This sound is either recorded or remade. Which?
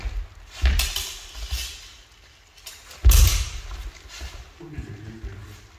recorded